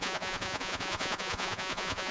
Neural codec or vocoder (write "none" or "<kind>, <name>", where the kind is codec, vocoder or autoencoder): vocoder, Vocos